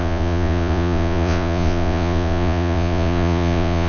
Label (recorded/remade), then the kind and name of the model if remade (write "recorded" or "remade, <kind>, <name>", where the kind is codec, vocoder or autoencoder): remade, vocoder, Vocos